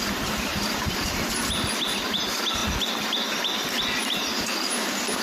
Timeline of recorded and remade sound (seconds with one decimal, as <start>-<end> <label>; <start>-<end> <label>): 0.0-5.2 recorded